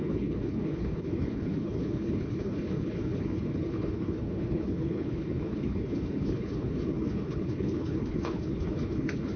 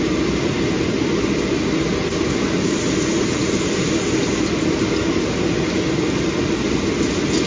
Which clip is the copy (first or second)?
first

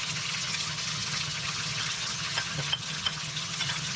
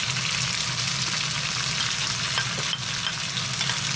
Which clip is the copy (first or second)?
first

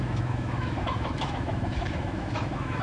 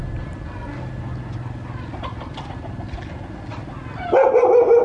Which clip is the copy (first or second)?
first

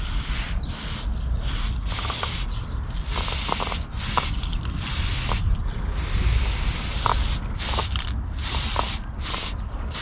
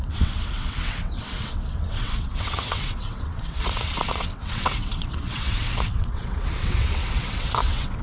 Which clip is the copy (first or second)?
second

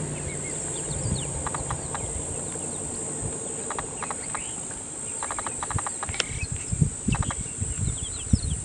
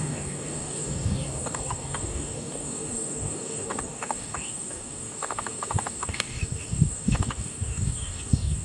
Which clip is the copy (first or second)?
second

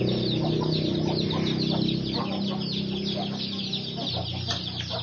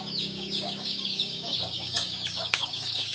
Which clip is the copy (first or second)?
second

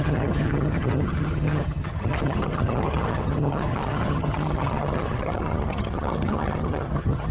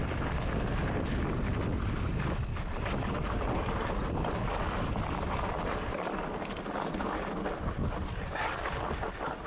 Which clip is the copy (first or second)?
first